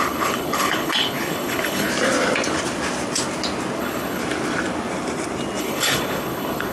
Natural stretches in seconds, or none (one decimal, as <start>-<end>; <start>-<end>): 1.9-3.8; 4.2-5.6